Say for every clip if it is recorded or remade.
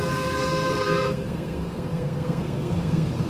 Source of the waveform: remade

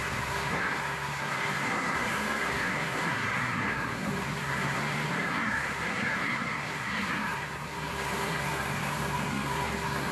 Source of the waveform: remade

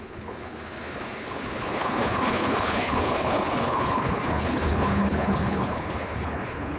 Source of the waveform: remade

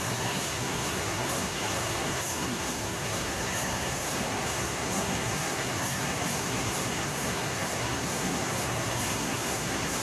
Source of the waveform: remade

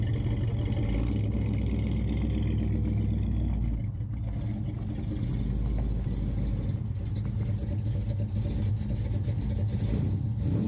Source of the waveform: recorded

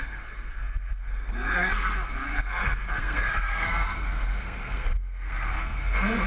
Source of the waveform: remade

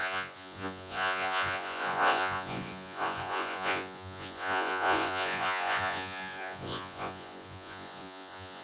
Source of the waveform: remade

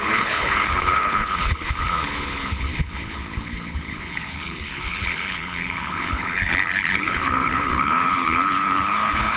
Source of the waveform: remade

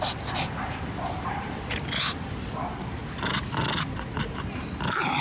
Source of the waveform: recorded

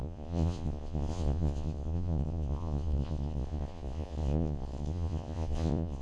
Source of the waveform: remade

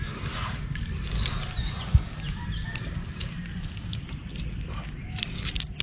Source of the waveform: recorded